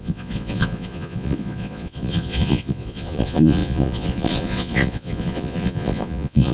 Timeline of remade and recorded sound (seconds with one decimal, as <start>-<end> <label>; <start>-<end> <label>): 0.0-6.5 remade